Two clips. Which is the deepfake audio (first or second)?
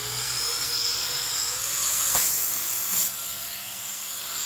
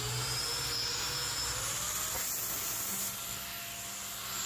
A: first